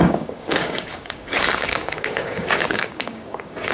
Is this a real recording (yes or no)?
no